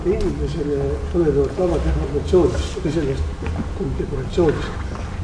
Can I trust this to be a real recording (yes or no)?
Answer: yes